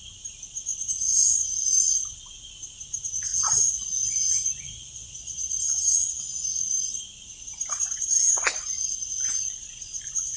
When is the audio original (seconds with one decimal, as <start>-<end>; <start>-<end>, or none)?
0.0-3.3; 6.6-10.4